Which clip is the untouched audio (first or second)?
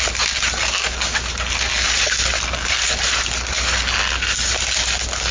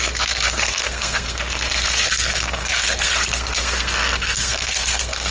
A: first